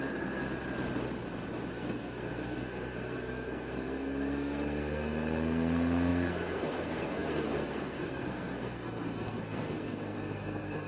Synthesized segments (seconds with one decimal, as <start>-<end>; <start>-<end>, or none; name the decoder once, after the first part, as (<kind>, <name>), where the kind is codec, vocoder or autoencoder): 0.0-0.4 (codec, SNAC); 1.7-10.9